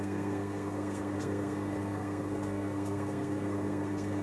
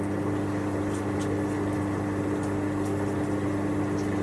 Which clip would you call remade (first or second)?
first